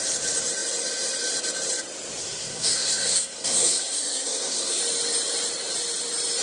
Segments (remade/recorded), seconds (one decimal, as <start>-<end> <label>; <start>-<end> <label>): 0.0-2.2 recorded; 2.2-4.8 remade; 4.8-6.4 recorded